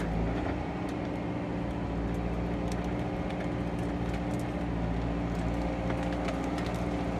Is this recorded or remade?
recorded